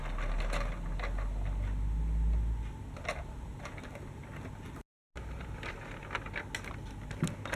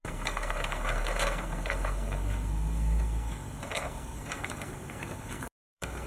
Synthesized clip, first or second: second